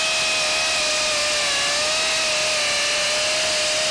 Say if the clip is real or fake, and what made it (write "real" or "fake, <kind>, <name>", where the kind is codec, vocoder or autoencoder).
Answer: real